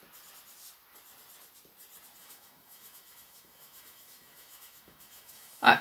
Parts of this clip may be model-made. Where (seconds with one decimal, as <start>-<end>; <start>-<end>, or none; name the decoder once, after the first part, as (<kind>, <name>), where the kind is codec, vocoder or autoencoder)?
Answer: 2.2-5.8 (autoencoder, DAC-VAE)